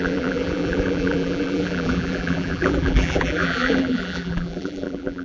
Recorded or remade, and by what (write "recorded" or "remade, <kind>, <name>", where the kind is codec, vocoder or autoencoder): remade, vocoder, BigVGAN v2